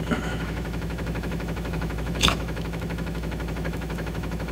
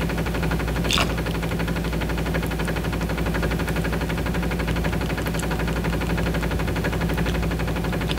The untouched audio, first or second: second